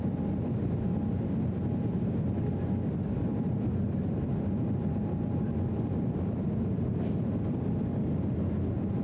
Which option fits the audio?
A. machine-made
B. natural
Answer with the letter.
A